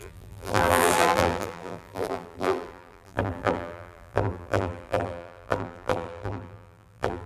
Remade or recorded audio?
remade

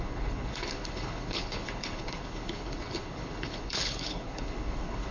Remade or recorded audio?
remade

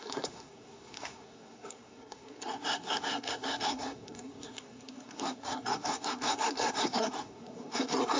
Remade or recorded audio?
remade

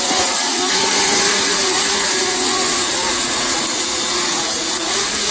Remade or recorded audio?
remade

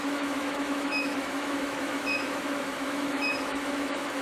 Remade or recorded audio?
remade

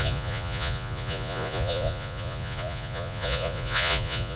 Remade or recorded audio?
remade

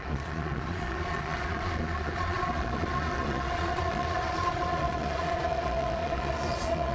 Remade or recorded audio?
remade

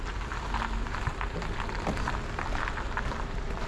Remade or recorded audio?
remade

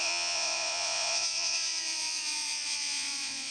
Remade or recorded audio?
remade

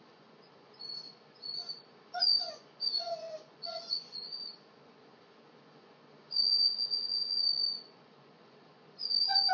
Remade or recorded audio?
remade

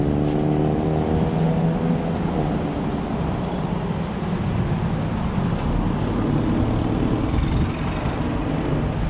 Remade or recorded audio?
recorded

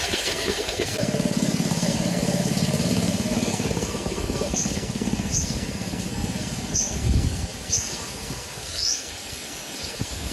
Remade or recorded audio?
remade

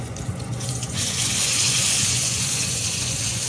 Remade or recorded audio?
remade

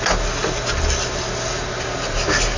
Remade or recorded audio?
recorded